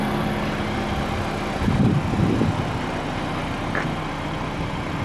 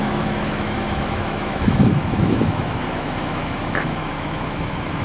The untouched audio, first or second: first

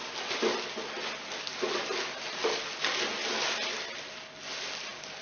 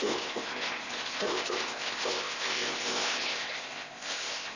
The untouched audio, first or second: first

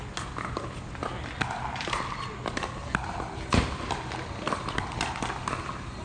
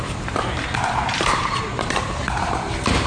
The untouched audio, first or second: first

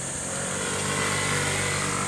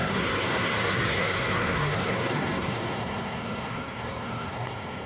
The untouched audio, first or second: first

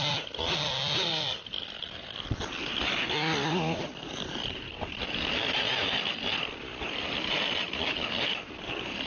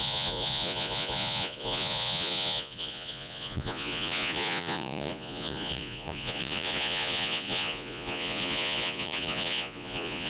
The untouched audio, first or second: first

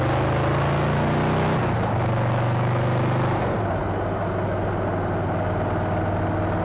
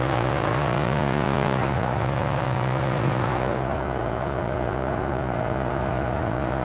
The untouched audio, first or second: first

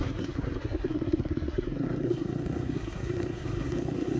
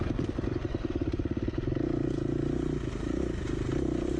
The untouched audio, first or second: second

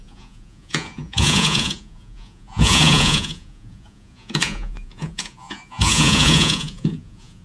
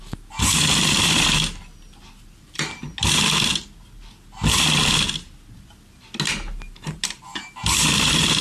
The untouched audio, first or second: second